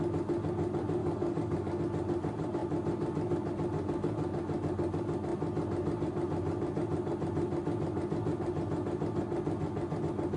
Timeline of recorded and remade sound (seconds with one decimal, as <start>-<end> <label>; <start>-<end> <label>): 0.0-1.0 recorded; 1.0-1.8 remade; 1.8-10.4 recorded